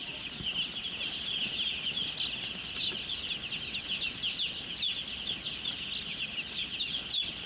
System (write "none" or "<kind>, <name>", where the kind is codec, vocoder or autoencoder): none